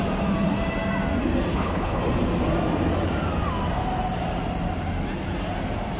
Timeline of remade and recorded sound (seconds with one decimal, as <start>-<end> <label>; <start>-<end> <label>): 0.0-1.5 recorded; 1.5-2.0 remade; 2.0-6.0 recorded